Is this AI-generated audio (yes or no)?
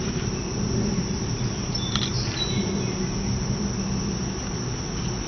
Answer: no